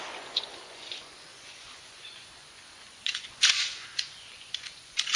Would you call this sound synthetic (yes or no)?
yes